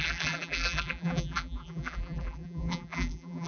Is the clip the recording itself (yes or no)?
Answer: no